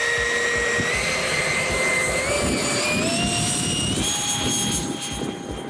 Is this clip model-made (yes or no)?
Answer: no